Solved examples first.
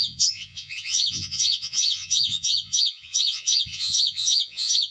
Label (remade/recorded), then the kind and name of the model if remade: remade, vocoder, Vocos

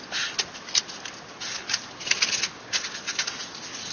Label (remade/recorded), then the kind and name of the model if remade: recorded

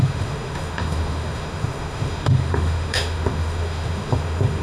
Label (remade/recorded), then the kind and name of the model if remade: remade, autoencoder, DAC-VAE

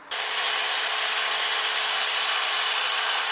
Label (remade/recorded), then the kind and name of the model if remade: recorded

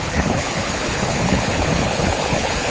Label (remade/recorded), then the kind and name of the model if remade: remade, codec, HILCodec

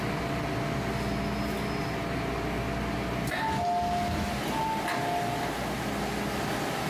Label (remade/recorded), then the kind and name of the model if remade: recorded